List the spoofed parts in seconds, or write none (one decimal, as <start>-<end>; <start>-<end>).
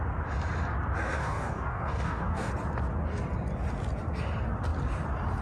1.2-2.5